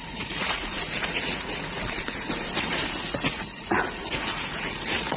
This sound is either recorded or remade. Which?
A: remade